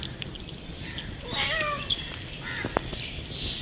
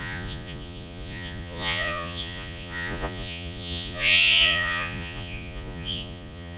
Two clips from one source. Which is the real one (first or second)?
first